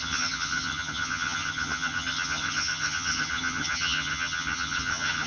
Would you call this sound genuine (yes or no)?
no